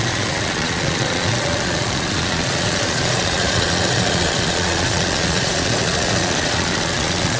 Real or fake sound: fake